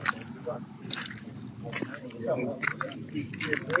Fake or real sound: real